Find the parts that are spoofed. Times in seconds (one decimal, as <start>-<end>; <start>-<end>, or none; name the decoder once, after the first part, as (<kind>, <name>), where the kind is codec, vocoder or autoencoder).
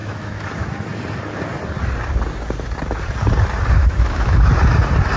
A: 0.0-0.5 (autoencoder, DAC-VAE); 3.8-4.5